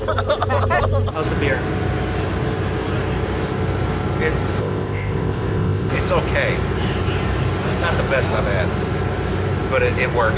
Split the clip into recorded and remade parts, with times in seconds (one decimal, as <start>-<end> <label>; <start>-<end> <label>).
0.0-4.6 recorded; 4.6-5.9 remade; 5.9-10.4 recorded